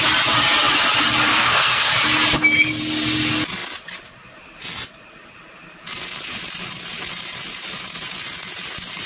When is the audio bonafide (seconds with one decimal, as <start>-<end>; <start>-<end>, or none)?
0.0-1.3; 1.9-9.1